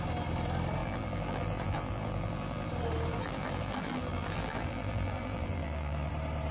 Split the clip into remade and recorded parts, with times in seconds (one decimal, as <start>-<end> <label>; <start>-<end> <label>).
0.0-0.8 recorded; 0.8-2.7 remade; 2.7-3.1 recorded; 3.1-6.1 remade; 6.1-6.5 recorded